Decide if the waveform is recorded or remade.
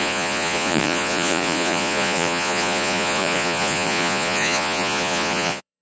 remade